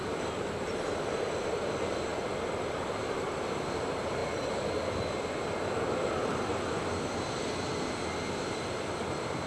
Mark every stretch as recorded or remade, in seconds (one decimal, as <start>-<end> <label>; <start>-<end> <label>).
0.0-4.2 remade; 4.2-7.9 recorded; 7.9-9.5 remade